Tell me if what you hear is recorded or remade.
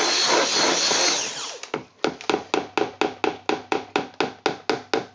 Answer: recorded